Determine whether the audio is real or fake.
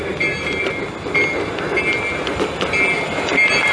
real